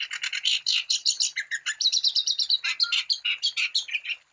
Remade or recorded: recorded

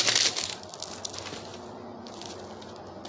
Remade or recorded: recorded